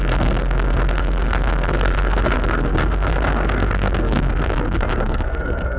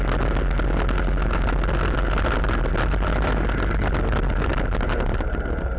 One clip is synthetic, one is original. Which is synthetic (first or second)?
first